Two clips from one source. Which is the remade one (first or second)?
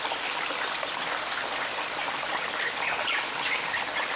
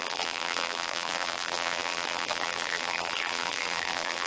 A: second